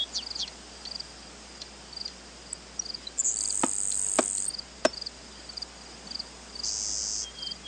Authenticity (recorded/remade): recorded